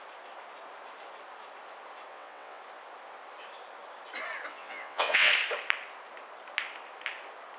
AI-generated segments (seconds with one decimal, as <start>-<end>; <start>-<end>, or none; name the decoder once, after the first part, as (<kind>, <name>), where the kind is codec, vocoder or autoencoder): 2.1-2.6 (vocoder, WaveNeXt); 4.5-5.3